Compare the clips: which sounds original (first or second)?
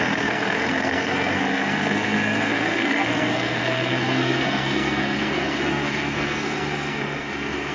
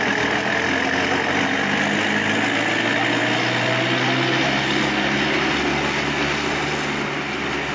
second